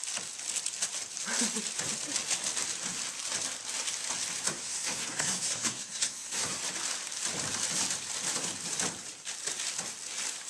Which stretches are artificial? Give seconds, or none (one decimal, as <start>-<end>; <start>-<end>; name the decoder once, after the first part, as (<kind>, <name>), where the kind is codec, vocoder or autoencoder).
4.5-6.6 (codec, SNAC)